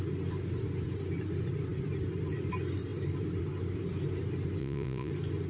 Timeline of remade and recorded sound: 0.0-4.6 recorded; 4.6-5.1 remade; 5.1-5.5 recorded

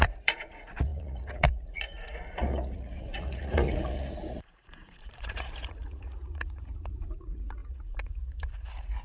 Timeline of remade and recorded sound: 0.0-9.0 remade

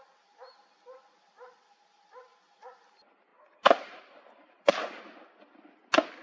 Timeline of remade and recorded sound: 0.0-3.3 recorded; 3.3-5.0 remade; 5.0-6.2 recorded

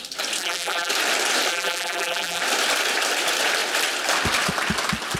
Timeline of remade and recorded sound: 0.0-0.4 recorded; 0.4-0.9 remade; 0.9-1.5 recorded; 1.5-2.4 remade; 2.4-5.2 recorded

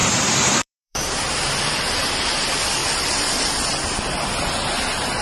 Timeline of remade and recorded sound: 0.0-2.8 remade; 2.8-5.2 recorded